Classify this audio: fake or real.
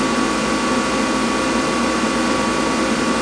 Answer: real